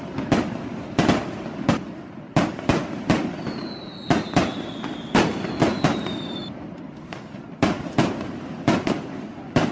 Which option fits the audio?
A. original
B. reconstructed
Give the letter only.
A